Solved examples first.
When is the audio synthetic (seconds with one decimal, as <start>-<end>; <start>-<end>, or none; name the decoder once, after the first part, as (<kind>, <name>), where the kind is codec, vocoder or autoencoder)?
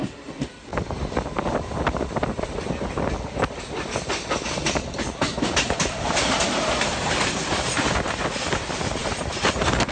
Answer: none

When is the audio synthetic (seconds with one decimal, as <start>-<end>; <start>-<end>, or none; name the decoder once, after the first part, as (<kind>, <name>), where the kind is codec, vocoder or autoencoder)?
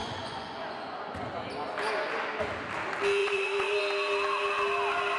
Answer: 0.0-1.3 (vocoder, Vocos); 3.2-3.8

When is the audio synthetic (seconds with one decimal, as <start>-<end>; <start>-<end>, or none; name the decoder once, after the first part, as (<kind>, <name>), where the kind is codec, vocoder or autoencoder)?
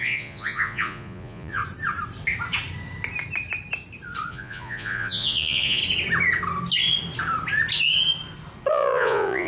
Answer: 0.0-1.6 (vocoder, Vocos); 4.3-5.8; 8.7-9.5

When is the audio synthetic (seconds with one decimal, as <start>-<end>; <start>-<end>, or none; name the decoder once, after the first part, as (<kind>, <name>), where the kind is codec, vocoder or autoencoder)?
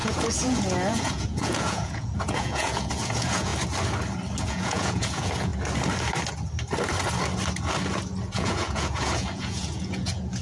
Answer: 0.0-3.5 (vocoder, Vocos); 4.4-5.5; 8.3-10.4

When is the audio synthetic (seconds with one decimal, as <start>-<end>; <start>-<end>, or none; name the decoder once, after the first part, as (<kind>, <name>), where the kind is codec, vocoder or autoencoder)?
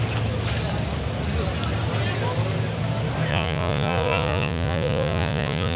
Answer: 3.3-5.8 (vocoder, Vocos)